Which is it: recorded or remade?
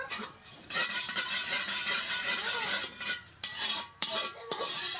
remade